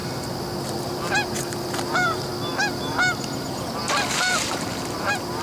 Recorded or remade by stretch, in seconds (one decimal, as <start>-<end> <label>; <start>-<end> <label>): 0.0-0.6 recorded; 0.6-2.3 remade; 2.3-2.9 recorded; 2.9-3.8 remade; 3.8-4.3 recorded; 4.3-5.4 remade